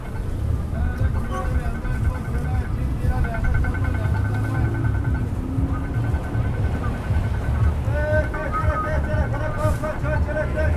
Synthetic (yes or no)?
no